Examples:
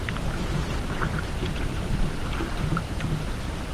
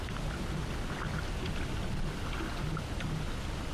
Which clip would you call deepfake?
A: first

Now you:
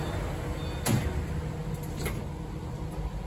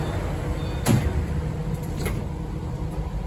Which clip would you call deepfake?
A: second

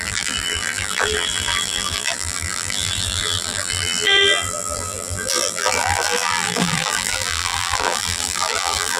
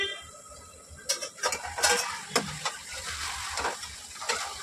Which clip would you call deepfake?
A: first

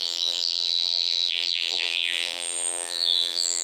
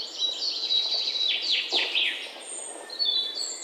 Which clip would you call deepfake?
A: first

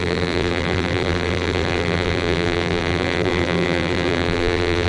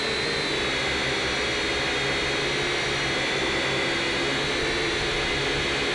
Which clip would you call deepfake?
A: first